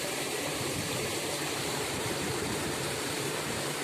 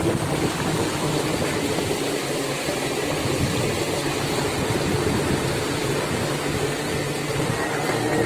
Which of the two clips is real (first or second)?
second